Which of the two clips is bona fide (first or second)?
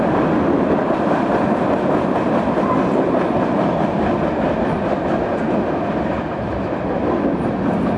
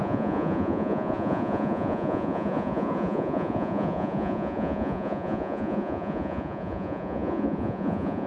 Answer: first